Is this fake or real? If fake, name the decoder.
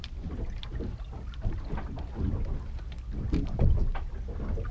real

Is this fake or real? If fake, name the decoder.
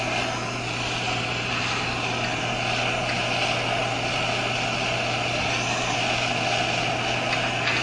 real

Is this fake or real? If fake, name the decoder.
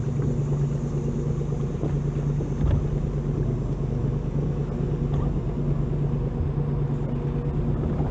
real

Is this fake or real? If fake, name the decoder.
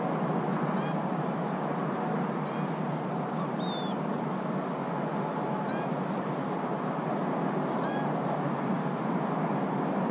real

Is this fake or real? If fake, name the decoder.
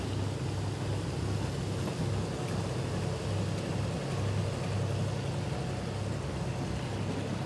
real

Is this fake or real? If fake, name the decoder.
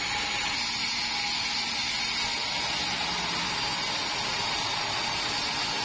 real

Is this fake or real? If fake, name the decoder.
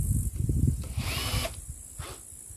real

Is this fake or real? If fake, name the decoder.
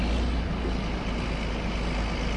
real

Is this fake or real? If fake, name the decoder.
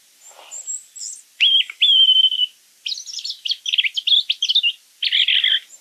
real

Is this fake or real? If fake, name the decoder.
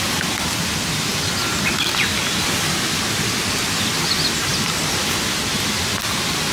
real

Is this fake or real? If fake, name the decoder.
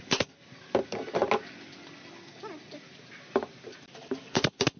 real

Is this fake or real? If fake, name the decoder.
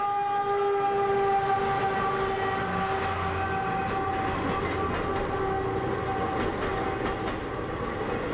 real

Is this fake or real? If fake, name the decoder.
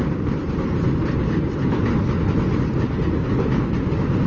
real